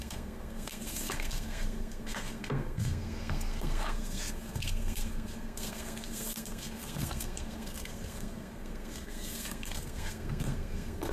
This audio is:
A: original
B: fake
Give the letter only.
B